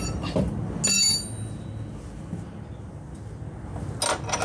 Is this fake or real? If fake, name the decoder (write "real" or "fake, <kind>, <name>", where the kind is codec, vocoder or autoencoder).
real